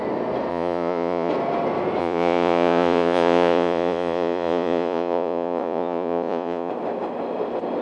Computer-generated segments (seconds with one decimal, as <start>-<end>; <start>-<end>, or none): 0.5-1.3; 2.0-6.7